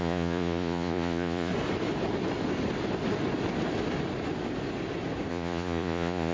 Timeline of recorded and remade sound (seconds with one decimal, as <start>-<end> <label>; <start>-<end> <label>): 0.0-1.5 remade; 1.5-5.3 recorded; 5.3-6.3 remade